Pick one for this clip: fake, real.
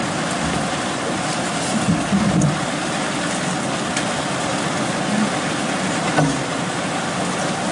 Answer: real